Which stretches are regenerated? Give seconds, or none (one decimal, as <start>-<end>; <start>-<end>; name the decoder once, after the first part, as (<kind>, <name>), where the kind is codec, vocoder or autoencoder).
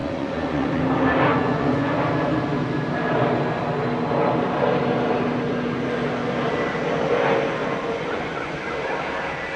0.0-0.8 (vocoder, Vocos); 1.3-1.9; 7.6-8.5